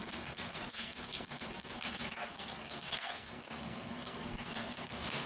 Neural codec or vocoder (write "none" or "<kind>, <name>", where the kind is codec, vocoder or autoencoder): codec, SNAC